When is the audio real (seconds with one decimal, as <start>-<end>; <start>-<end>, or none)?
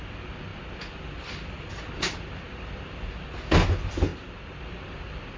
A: 0.0-5.4